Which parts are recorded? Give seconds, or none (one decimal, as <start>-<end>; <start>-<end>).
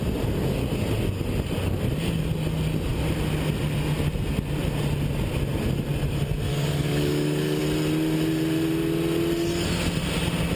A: 0.0-6.5; 7.6-10.6